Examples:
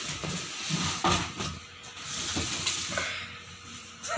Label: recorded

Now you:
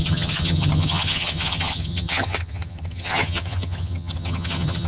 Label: remade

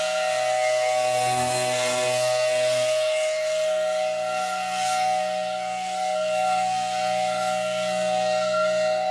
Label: remade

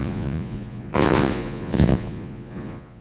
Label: remade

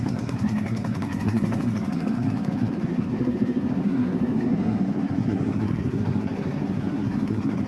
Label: remade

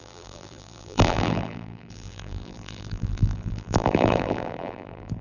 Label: remade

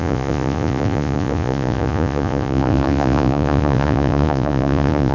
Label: remade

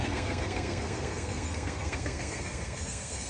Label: remade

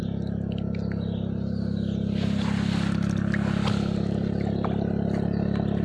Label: recorded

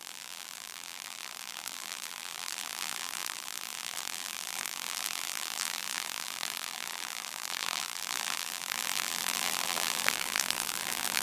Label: remade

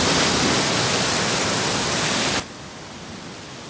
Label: recorded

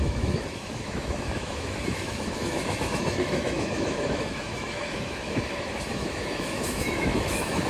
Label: remade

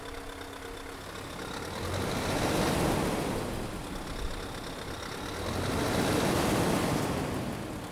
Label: recorded